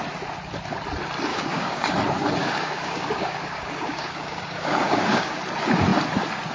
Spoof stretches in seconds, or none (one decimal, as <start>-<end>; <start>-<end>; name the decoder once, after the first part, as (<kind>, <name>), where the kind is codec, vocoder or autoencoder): 1.3-1.9 (codec, DAC); 2.4-5.4